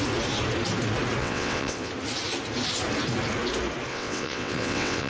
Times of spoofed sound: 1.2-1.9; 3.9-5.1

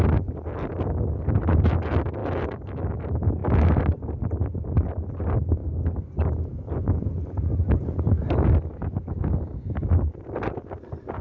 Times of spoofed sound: 2.2-3.0